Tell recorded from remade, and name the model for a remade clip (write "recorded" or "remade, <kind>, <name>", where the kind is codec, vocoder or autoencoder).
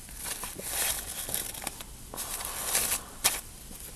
recorded